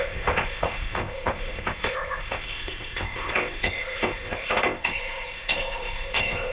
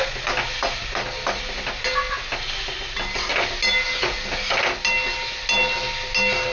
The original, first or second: second